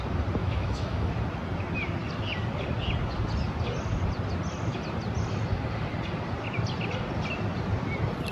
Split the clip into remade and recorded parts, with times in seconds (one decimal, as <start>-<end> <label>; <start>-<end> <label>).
0.0-0.4 recorded; 0.4-1.1 remade; 1.1-8.3 recorded